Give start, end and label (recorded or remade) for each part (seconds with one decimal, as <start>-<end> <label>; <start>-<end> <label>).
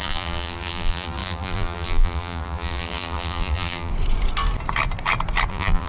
0.0-3.9 remade; 3.9-5.5 recorded; 5.5-5.9 remade